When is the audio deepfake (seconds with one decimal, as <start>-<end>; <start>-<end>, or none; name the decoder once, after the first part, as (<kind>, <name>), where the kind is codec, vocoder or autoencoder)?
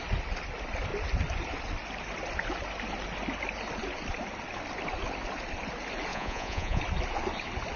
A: 6.1-6.8 (vocoder, Vocos)